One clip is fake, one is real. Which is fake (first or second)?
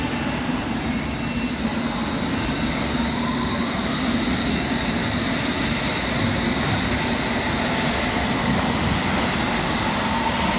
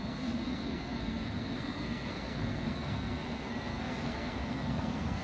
second